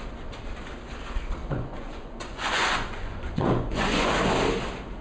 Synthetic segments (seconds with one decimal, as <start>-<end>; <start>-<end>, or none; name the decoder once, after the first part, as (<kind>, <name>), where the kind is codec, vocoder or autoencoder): 1.4-4.1 (vocoder, Vocos)